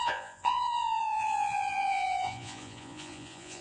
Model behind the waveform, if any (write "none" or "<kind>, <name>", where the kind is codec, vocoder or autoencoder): vocoder, Vocos